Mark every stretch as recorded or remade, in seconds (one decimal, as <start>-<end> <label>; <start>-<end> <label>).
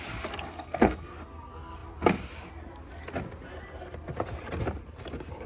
0.0-0.5 recorded; 0.5-1.1 remade; 1.1-5.5 recorded